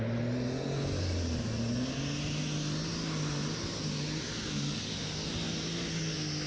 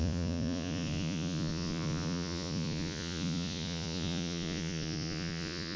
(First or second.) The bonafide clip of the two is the first